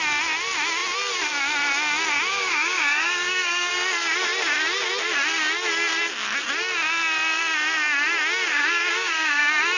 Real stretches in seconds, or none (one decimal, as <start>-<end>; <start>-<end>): 0.0-2.3; 3.7-8.5; 9.4-9.8